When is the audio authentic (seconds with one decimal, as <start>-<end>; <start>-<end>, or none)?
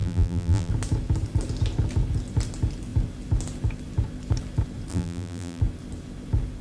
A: 0.7-4.9; 5.6-6.6